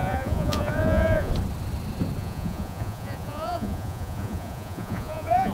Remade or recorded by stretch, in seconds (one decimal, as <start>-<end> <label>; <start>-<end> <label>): 0.0-1.3 remade; 1.3-2.2 recorded; 2.2-5.5 remade